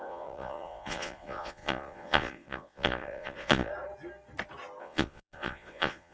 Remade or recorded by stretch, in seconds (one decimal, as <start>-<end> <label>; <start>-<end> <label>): 0.0-3.7 remade; 3.7-4.8 recorded; 4.8-6.1 remade

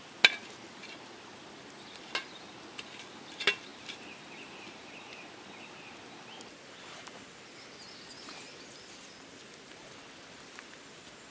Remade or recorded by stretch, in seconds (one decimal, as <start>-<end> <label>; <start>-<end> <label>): 0.0-11.3 recorded

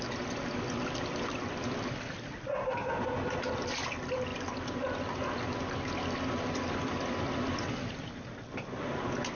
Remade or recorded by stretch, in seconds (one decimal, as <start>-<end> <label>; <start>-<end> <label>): 0.0-9.4 recorded

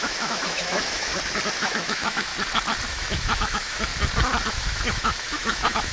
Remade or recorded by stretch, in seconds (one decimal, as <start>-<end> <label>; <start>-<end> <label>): 0.0-1.1 remade; 1.1-1.6 recorded; 1.6-2.3 remade; 2.3-2.9 recorded; 2.9-3.9 remade; 3.9-4.5 recorded; 4.5-5.9 remade

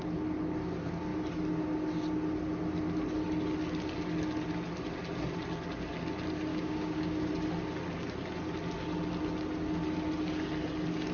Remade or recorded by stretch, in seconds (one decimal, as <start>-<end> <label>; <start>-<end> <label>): 0.0-6.5 recorded; 6.5-7.3 remade; 7.3-11.1 recorded

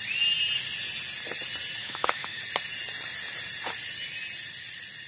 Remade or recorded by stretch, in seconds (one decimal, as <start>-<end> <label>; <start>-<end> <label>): 0.0-1.8 recorded; 1.8-2.4 remade; 2.4-5.1 recorded

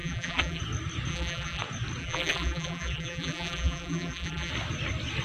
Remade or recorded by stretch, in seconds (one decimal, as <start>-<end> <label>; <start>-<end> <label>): 0.0-0.6 remade; 0.6-1.1 recorded; 1.1-1.6 remade; 1.6-2.0 recorded; 2.0-4.5 remade; 4.5-5.2 recorded